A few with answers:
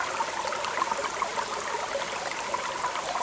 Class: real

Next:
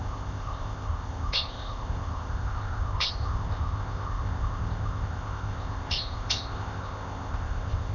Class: fake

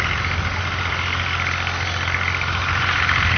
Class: real